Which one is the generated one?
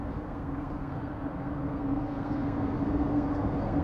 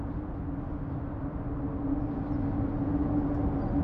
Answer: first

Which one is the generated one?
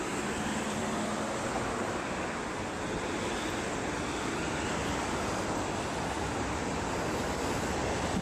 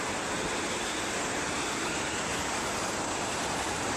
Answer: second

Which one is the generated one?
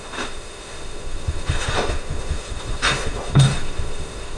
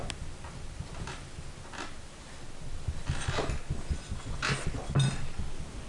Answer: first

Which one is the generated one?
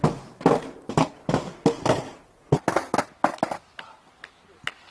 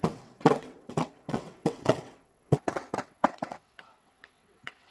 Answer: second